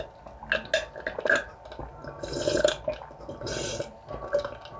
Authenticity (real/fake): real